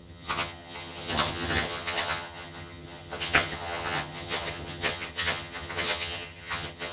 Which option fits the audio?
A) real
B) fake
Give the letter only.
B